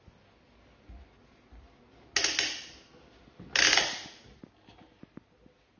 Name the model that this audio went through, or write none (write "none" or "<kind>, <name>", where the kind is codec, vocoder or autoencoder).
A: none